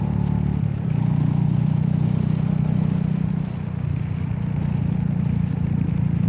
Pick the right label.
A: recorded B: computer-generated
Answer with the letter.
A